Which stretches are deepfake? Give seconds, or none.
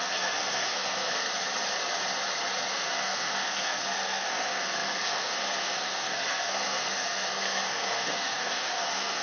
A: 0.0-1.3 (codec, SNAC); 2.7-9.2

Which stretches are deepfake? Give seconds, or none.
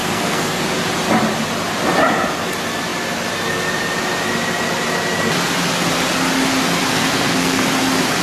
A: 0.0-0.6 (codec, SNAC); 6.9-7.6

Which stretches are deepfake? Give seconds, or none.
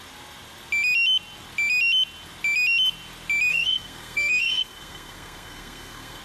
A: 3.5-6.2 (codec, SNAC)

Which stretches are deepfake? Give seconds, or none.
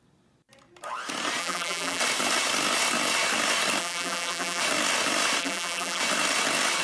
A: 1.4-2.0 (vocoder, BigVGAN v2); 3.8-4.6; 5.4-6.0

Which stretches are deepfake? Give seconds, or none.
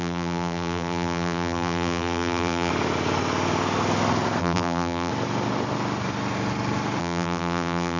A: 0.0-2.7 (vocoder, BigVGAN v2); 4.4-5.1; 7.0-8.0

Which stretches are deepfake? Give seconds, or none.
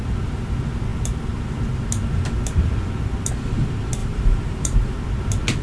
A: 4.0-4.9 (vocoder, BigVGAN v2)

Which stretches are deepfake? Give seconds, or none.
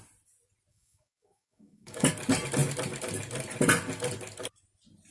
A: 0.7-2.1 (codec, DAC)